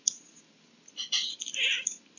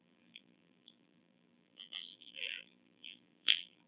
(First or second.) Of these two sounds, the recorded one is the first